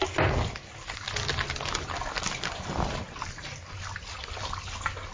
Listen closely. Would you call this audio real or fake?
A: real